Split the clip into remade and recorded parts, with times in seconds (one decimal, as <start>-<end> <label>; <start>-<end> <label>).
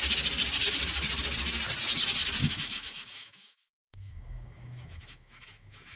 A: 0.0-2.4 recorded; 2.4-6.0 remade